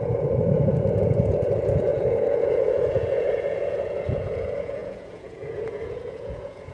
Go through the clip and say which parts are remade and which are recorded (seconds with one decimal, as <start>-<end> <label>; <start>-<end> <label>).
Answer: 0.0-6.7 remade